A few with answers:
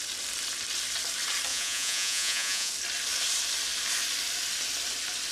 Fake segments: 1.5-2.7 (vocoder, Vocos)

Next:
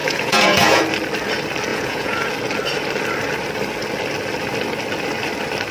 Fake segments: 0.0-0.8 (vocoder, Vocos); 1.7-2.2

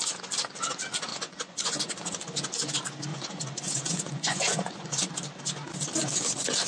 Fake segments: 1.1-2.2 (vocoder, Vocos); 3.1-5.1